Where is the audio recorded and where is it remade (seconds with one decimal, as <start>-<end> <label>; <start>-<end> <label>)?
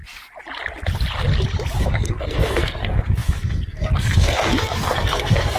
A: 0.0-1.8 recorded; 1.8-5.6 remade